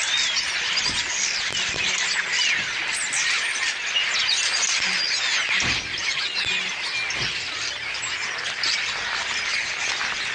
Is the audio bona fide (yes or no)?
yes